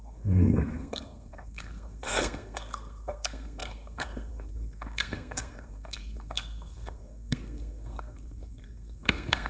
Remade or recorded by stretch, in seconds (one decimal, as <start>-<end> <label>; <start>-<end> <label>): 0.0-9.5 remade